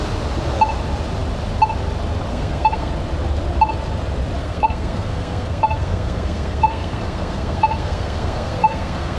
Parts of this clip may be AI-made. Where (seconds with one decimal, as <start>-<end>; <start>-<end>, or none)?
2.3-2.9; 4.4-9.2